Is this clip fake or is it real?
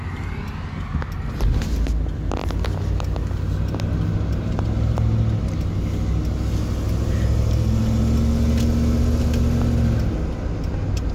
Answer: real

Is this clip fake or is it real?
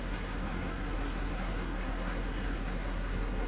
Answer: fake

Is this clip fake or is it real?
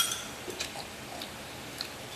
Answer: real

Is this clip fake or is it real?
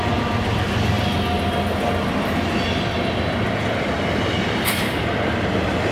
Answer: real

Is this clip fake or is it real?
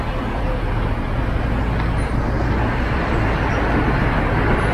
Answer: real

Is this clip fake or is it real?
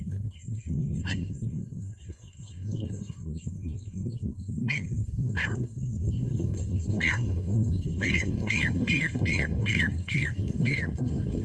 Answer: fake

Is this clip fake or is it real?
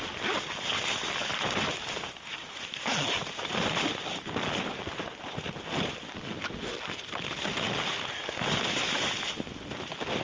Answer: real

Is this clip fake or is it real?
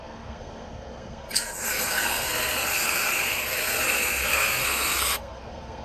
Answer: fake